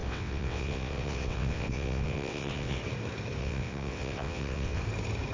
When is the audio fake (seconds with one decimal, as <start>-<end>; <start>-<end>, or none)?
0.0-2.8; 3.4-4.8